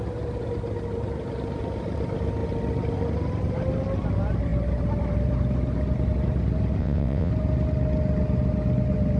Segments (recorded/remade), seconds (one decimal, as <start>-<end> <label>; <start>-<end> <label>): 0.0-6.8 recorded; 6.8-7.3 remade; 7.3-9.2 recorded